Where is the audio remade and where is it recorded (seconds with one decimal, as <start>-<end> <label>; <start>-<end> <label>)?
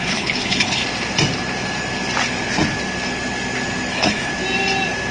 0.0-0.8 remade; 0.8-3.9 recorded; 3.9-4.3 remade; 4.3-5.1 recorded